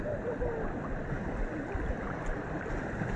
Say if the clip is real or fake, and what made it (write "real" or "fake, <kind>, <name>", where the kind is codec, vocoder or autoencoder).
real